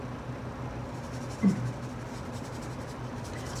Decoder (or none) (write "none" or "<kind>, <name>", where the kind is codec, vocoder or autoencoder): none